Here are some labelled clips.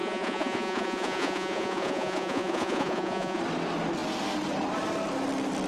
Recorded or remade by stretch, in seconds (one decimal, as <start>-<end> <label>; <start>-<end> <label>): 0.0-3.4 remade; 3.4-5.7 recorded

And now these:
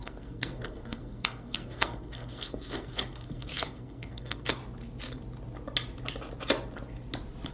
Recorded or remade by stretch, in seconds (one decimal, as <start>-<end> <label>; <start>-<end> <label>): 0.0-4.6 remade; 4.6-7.5 recorded

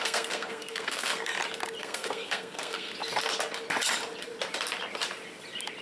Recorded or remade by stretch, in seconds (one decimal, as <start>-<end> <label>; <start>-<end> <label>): 0.0-1.3 remade; 1.3-1.8 recorded; 1.8-2.9 remade; 2.9-5.8 recorded

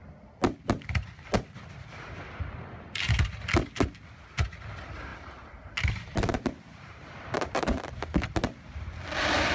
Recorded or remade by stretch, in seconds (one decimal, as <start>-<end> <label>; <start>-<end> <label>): 0.0-5.1 recorded; 5.1-7.8 remade; 7.8-9.5 recorded

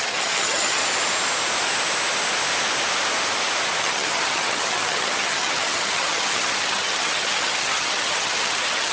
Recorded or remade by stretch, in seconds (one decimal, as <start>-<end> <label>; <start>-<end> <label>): 0.0-0.8 remade; 0.8-3.8 recorded; 3.8-8.9 remade

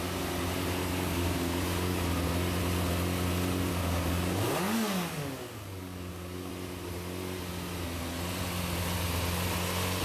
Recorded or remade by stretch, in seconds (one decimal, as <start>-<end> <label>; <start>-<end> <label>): 0.0-0.8 recorded; 0.8-2.0 remade; 2.0-3.7 recorded; 3.7-6.5 remade; 6.5-10.0 recorded

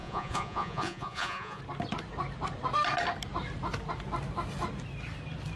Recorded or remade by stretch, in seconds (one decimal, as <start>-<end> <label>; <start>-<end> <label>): 0.0-1.6 remade; 1.6-5.6 recorded

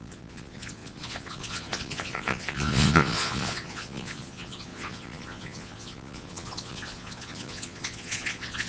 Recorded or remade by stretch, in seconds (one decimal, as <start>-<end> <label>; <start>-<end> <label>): 0.0-8.7 remade